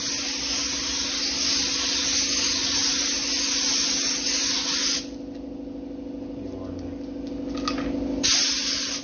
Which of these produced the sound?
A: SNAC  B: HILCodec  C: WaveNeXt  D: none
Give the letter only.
D